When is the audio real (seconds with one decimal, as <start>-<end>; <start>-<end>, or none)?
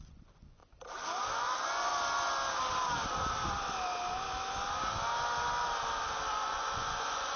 0.6-1.3; 1.9-6.3